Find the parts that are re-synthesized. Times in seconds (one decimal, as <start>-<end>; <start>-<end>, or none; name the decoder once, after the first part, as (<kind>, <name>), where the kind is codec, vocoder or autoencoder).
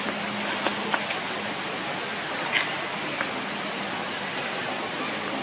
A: none